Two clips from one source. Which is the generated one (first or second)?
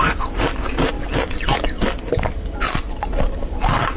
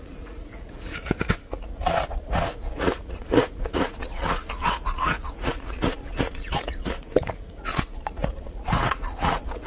second